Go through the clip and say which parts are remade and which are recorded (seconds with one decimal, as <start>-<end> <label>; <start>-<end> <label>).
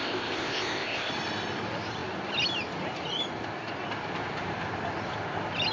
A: 0.0-1.1 remade; 1.1-5.7 recorded